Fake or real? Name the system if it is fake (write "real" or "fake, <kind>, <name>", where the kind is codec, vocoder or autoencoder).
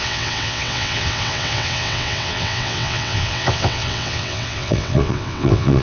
fake, vocoder, WaveNeXt